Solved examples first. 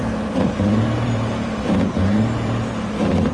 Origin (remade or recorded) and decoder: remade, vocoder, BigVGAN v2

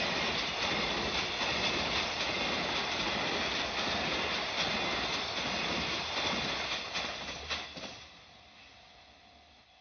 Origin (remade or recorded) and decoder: recorded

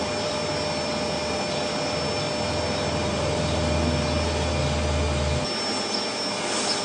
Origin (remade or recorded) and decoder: recorded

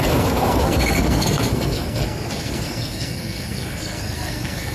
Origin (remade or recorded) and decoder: remade, codec, SNAC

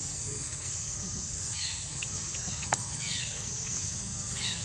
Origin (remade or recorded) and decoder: remade, codec, SNAC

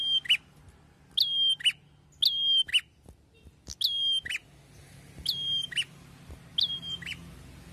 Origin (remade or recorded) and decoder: recorded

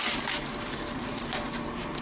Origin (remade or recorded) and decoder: recorded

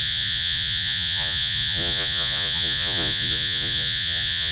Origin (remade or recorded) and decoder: remade, vocoder, Vocos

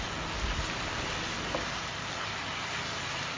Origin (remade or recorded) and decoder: recorded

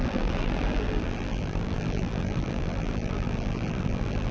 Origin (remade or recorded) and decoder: remade, vocoder, BigVGAN v2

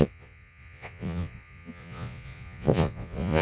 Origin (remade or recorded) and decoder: remade, vocoder, Vocos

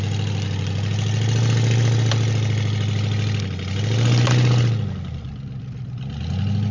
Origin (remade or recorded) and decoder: recorded